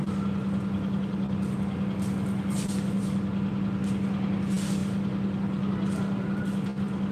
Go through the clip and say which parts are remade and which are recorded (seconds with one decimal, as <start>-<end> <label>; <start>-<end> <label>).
0.0-7.1 recorded